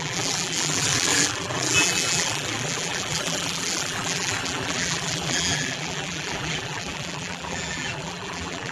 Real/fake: fake